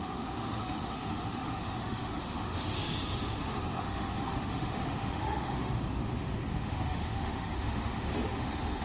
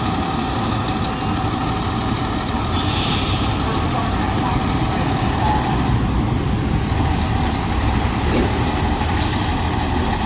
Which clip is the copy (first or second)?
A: first